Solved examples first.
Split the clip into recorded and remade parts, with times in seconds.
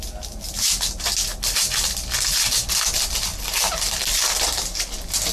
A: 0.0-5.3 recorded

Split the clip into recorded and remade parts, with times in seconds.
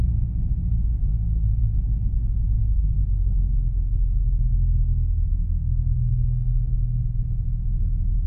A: 0.0-1.1 recorded; 1.1-1.6 remade; 1.6-2.6 recorded; 2.6-7.0 remade; 7.0-8.3 recorded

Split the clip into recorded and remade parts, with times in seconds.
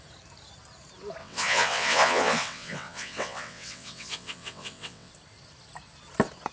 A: 0.0-1.2 recorded; 1.2-5.1 remade; 5.1-6.5 recorded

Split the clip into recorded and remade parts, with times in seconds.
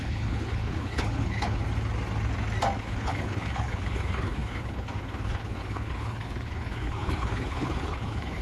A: 0.0-1.6 remade; 1.6-2.8 recorded; 2.8-8.4 remade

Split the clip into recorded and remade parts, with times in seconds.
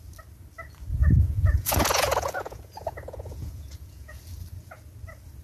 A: 0.0-1.0 recorded; 1.0-4.2 remade; 4.2-5.4 recorded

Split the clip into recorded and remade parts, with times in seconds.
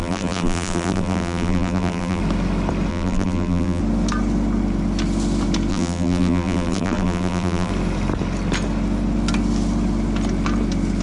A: 0.0-2.2 remade; 2.2-2.9 recorded; 2.9-3.8 remade; 3.8-5.7 recorded; 5.7-7.7 remade; 7.7-11.0 recorded